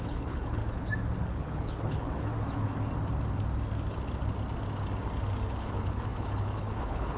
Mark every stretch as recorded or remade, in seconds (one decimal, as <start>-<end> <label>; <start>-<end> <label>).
0.0-0.6 remade; 0.6-1.2 recorded; 1.2-2.3 remade; 2.3-5.6 recorded; 5.6-7.2 remade